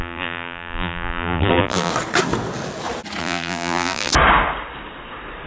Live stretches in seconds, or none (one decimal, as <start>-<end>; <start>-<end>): 1.9-3.2; 4.1-5.5